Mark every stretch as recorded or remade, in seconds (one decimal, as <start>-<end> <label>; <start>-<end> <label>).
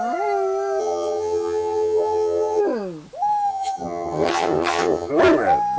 0.0-0.8 recorded; 0.8-2.6 remade; 2.6-3.5 recorded; 3.5-5.1 remade; 5.1-5.8 recorded